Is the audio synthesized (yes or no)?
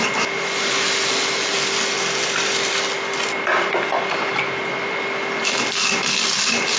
no